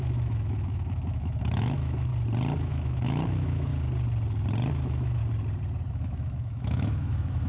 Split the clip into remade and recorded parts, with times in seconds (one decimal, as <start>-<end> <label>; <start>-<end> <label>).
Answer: 0.0-2.1 remade; 2.1-2.6 recorded; 2.6-3.7 remade; 3.7-4.7 recorded; 4.7-5.2 remade; 5.2-5.9 recorded; 5.9-7.5 remade